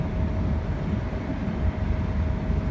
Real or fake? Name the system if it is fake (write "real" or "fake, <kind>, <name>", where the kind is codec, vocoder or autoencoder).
real